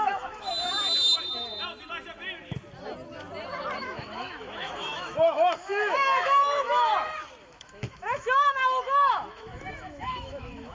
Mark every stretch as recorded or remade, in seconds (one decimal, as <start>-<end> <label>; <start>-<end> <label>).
0.0-0.5 remade; 0.5-3.8 recorded; 3.8-6.9 remade; 6.9-7.4 recorded; 7.4-10.7 remade